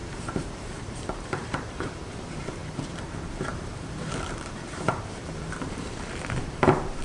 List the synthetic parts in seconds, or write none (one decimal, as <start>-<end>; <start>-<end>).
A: 0.0-7.0